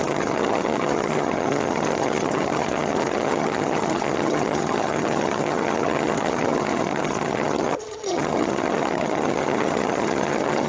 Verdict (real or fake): fake